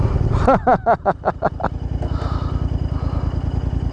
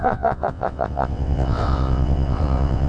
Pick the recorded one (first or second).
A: first